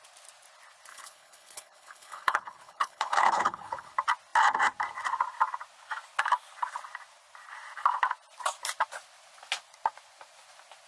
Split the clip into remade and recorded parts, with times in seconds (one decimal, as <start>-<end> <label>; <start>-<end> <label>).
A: 0.0-0.9 recorded; 0.9-3.9 remade; 3.9-10.9 recorded